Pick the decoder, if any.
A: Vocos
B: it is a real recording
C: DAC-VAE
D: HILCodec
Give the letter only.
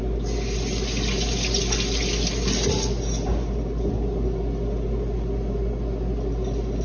B